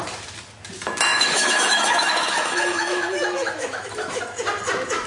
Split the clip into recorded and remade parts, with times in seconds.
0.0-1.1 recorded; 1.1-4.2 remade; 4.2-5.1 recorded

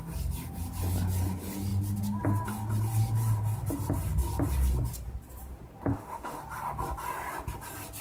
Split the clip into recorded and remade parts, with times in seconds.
0.0-5.9 recorded; 5.9-6.4 remade; 6.4-8.0 recorded

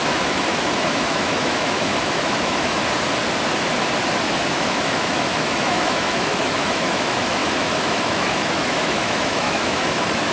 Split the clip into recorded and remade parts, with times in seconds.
0.0-2.8 remade; 2.8-4.3 recorded; 4.3-10.3 remade

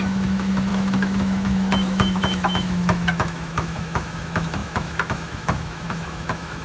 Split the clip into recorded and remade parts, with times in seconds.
0.0-6.6 remade

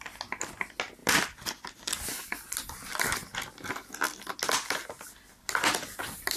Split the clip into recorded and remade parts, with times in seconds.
0.0-6.4 recorded

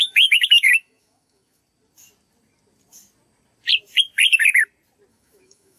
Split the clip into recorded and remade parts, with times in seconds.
0.0-1.6 remade; 1.6-5.1 recorded; 5.1-5.8 remade